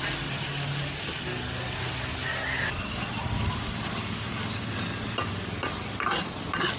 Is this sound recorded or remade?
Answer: recorded